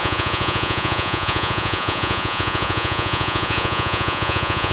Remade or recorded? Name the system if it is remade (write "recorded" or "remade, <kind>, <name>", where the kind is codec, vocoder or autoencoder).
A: remade, vocoder, Vocos